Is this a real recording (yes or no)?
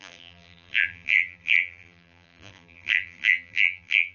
no